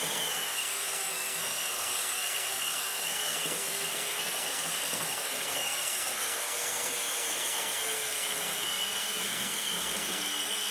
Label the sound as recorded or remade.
remade